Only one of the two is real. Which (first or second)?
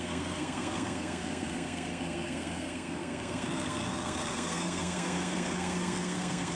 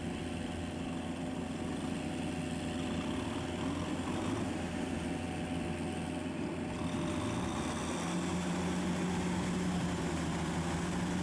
second